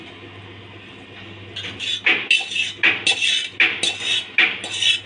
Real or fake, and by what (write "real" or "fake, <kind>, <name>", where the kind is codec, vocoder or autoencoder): real